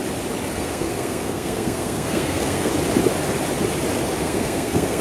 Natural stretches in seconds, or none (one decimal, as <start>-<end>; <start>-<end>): 0.0-0.5; 2.7-4.2